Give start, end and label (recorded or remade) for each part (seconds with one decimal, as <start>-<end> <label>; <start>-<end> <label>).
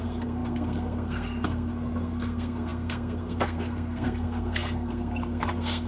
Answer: 0.0-5.9 remade